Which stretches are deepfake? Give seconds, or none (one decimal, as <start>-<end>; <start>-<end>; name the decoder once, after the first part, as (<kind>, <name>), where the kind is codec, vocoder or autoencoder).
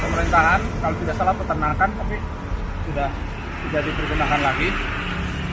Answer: none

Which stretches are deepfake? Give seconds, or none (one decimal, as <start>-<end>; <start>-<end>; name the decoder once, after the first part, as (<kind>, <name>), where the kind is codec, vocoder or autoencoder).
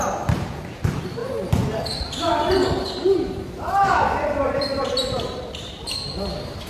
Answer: 3.0-3.7 (vocoder, BigVGAN v2); 4.7-6.7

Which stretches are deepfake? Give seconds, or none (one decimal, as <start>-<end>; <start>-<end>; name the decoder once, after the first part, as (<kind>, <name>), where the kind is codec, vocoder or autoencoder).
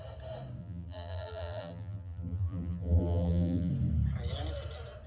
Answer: 0.6-3.7 (vocoder, BigVGAN v2)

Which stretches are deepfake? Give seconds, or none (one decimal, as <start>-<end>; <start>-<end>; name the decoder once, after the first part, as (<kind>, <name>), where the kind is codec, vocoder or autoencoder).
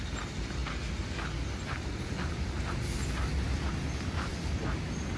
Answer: none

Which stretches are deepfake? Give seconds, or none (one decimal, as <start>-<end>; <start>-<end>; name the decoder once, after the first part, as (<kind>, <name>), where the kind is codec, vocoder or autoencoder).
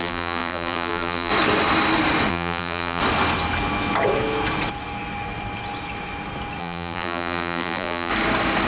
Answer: 0.0-1.3 (vocoder, BigVGAN v2); 2.3-3.0; 6.6-8.1